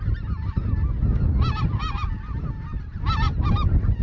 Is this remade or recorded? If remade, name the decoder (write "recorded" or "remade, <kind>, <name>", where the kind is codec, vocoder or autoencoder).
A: recorded